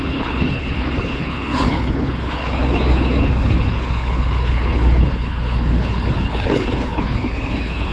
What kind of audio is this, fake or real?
fake